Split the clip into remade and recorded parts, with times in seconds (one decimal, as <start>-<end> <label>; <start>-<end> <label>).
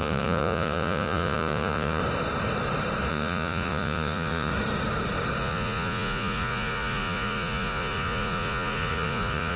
0.0-2.0 remade; 2.0-3.1 recorded; 3.1-4.5 remade; 4.5-5.4 recorded; 5.4-9.6 remade